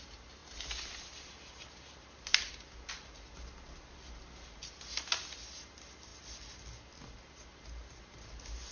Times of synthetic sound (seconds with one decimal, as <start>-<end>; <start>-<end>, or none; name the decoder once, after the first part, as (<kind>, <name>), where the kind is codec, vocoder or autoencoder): none